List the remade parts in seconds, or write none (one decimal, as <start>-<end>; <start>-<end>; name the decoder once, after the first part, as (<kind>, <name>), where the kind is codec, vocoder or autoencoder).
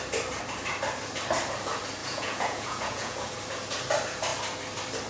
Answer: 2.0-3.3 (vocoder, Vocos)